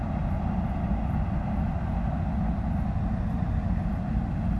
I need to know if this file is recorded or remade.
recorded